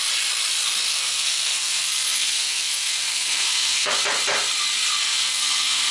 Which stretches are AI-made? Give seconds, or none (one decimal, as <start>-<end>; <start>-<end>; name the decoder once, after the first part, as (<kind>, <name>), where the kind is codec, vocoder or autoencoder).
0.9-3.9 (codec, SNAC); 5.0-5.9